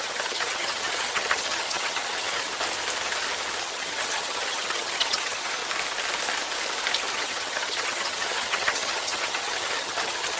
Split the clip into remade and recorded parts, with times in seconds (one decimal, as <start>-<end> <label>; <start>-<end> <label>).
0.0-2.5 remade; 2.5-3.6 recorded; 3.6-5.6 remade; 5.6-7.1 recorded; 7.1-10.4 remade

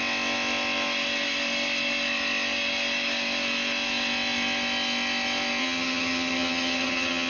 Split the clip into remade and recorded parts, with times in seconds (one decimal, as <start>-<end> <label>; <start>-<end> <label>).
0.0-5.6 recorded; 5.6-7.3 remade

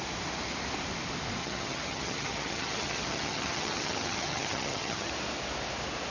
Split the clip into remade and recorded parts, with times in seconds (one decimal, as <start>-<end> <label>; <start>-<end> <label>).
0.0-1.4 recorded; 1.4-5.1 remade; 5.1-6.1 recorded

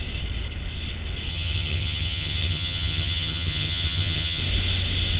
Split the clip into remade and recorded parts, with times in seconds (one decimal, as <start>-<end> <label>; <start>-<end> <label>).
0.0-1.3 recorded; 1.3-4.4 remade; 4.4-5.2 recorded